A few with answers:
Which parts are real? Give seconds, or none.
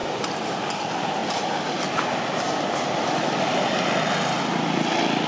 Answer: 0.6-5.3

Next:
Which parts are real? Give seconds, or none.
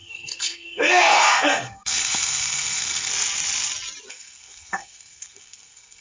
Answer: 3.1-4.1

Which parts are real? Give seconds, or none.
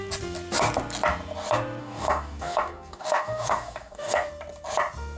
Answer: 0.0-1.8; 4.3-5.2